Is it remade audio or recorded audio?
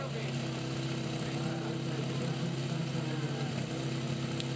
recorded